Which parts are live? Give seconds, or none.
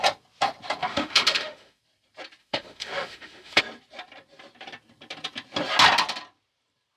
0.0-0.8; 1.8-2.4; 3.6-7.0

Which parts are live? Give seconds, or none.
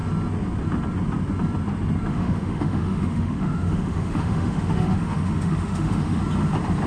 0.0-2.1; 6.2-6.9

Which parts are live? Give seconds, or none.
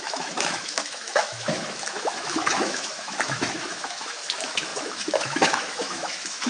none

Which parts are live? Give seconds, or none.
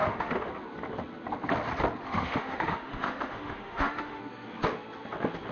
0.5-2.0; 4.2-5.5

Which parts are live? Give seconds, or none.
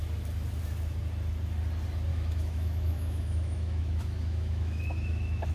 0.0-2.1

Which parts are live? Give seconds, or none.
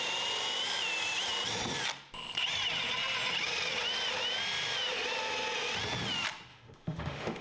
0.0-6.5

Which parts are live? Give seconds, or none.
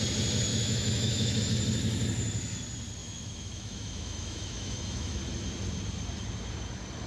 0.0-0.5; 1.4-3.0; 5.2-7.1